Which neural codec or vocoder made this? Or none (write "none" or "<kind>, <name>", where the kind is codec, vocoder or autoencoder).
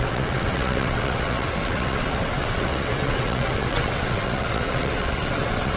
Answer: vocoder, WaveNeXt